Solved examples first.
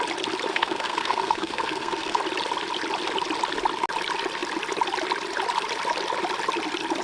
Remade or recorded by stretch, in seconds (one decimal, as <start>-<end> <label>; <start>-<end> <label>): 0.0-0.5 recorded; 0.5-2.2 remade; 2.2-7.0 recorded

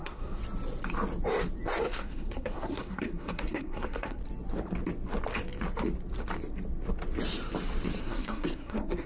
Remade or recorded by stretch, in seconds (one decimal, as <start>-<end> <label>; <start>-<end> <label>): 0.0-0.4 remade; 0.4-1.8 recorded; 1.8-4.2 remade; 4.2-8.0 recorded; 8.0-9.1 remade

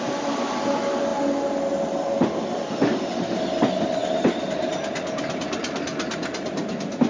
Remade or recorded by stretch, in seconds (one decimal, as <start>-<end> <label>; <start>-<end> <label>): 0.0-7.1 recorded

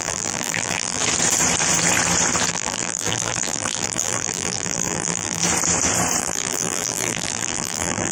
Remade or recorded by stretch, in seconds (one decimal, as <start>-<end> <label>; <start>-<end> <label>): 0.0-1.0 remade; 1.0-2.5 recorded; 2.5-5.4 remade; 5.4-6.2 recorded; 6.2-8.1 remade